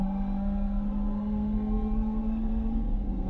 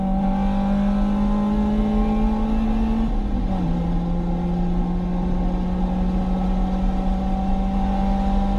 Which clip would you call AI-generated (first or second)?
first